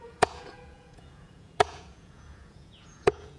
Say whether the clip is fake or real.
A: fake